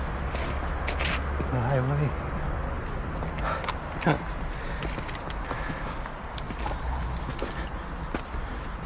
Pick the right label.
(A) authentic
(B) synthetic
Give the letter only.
A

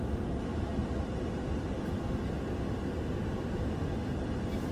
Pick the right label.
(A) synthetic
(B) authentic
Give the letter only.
B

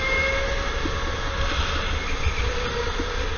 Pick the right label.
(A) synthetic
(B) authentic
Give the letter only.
B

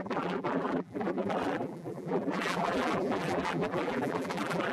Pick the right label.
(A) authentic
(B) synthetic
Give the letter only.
B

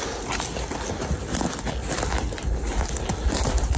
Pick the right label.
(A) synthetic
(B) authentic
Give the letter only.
B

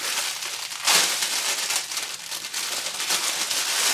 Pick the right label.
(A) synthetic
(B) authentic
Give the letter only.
B